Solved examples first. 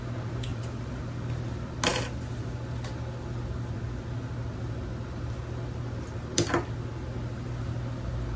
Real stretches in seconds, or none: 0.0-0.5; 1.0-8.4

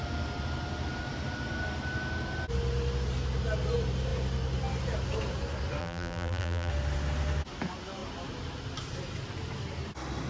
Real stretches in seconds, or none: 0.0-5.8; 6.7-10.3